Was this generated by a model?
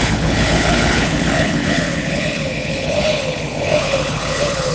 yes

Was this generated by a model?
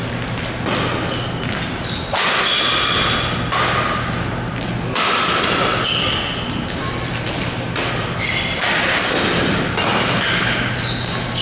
no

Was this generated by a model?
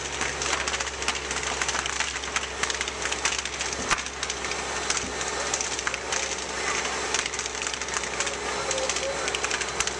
no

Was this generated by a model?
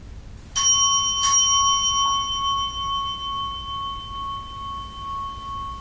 no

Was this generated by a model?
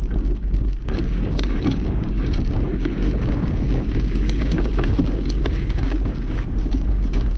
yes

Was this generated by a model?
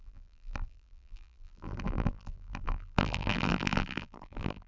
yes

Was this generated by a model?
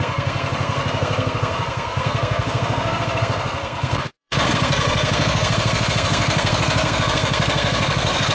yes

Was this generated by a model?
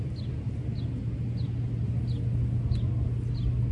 no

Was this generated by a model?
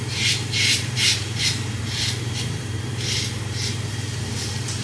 yes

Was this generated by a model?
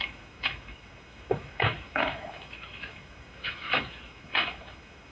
yes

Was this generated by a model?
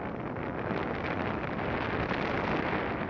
no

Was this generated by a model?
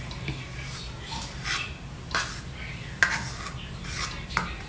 no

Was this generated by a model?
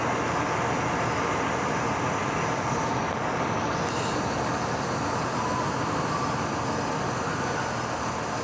no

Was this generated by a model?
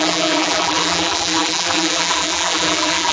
yes